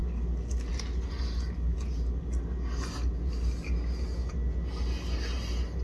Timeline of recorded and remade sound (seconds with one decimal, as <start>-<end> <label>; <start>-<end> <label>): 0.0-5.8 recorded